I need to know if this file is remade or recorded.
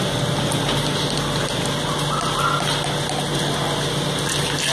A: recorded